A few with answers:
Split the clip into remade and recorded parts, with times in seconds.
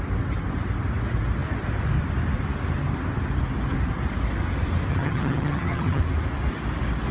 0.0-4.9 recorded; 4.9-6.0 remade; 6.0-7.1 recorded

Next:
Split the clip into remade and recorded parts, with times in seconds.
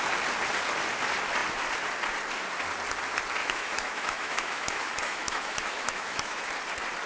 0.0-3.4 recorded; 3.4-6.5 remade; 6.5-7.1 recorded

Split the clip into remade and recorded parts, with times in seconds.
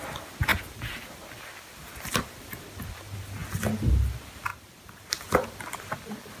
0.0-4.5 recorded; 4.5-5.1 remade; 5.1-6.4 recorded